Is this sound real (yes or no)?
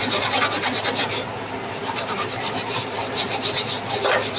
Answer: no